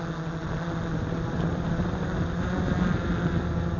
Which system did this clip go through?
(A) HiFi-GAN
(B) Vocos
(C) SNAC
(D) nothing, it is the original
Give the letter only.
D